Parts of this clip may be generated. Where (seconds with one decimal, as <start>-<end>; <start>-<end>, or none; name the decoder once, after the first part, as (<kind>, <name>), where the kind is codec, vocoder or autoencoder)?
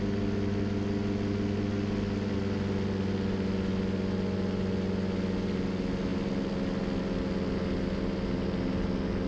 none